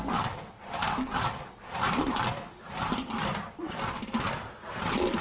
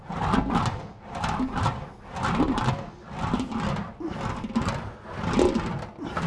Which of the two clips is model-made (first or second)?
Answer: first